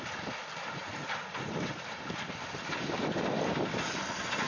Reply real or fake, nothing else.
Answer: real